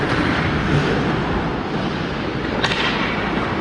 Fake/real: real